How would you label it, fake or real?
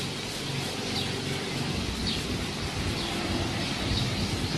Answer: real